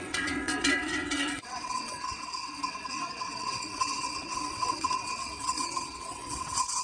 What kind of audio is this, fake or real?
fake